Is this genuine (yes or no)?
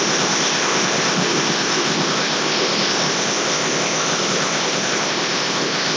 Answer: no